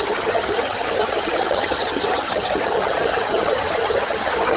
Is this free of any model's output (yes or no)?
no